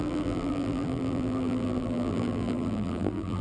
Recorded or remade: remade